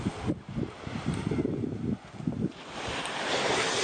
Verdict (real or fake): real